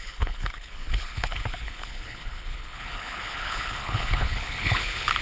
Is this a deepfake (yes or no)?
yes